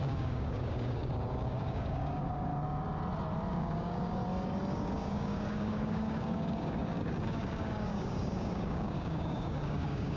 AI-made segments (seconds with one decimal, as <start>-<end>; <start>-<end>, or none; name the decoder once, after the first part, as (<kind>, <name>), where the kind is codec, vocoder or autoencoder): 0.0-2.5 (codec, DAC); 3.5-4.2; 4.7-10.2